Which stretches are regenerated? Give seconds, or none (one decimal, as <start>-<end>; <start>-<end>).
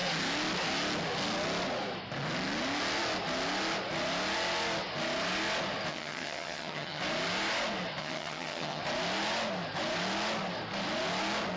5.9-7.0; 8.0-8.8